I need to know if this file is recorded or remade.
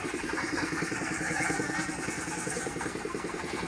remade